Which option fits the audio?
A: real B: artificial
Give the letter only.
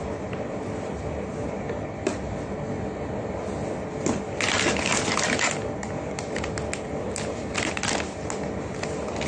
A